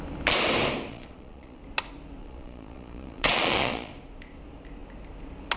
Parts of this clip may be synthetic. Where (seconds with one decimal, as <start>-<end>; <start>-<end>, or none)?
0.9-1.6; 2.2-3.9